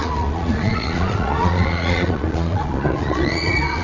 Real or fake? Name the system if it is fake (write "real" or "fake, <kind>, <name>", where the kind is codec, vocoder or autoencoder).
fake, vocoder, Vocos